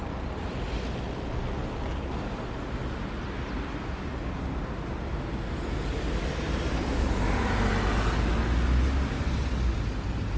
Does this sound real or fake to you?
real